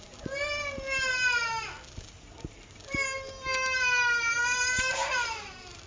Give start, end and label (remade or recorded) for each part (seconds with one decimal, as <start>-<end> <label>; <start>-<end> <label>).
0.0-5.9 recorded